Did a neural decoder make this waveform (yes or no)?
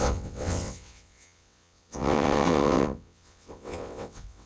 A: yes